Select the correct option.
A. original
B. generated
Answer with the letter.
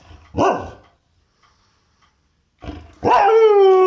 A